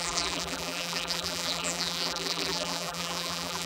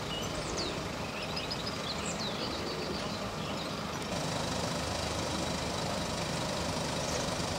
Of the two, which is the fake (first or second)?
first